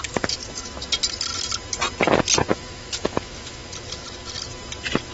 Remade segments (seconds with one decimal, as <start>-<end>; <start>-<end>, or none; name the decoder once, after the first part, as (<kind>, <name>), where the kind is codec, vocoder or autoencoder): 2.5-3.6 (autoencoder, DAC-VAE)